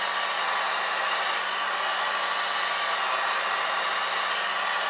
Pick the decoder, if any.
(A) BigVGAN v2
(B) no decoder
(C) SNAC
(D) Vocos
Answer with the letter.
B